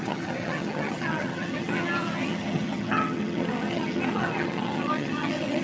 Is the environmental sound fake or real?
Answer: fake